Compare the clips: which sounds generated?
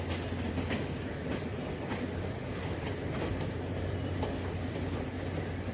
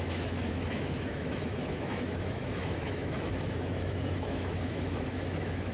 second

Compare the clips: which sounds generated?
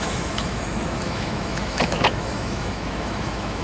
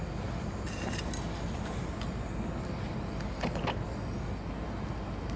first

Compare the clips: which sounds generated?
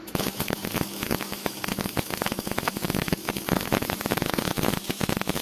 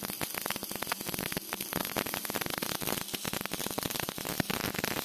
first